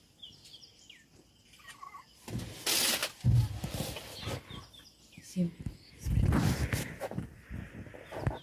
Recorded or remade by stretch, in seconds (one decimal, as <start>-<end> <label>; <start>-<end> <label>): 0.0-8.4 recorded